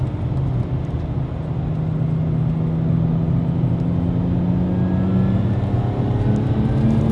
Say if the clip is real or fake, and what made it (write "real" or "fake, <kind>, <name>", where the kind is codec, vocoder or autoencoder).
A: real